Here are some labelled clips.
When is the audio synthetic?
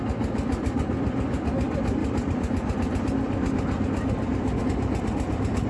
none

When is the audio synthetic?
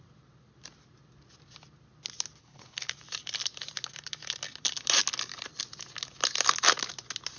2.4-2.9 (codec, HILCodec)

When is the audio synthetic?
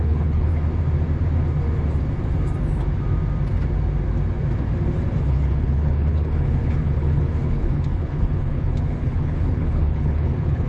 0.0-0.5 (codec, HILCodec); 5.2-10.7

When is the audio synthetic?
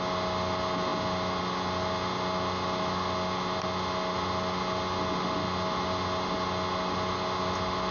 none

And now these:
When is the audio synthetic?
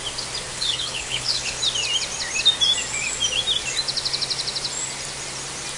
0.5-1.6 (codec, HILCodec)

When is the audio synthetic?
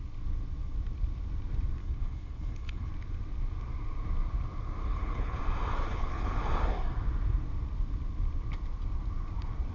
1.8-2.9 (codec, HILCodec); 4.8-5.4; 5.9-6.4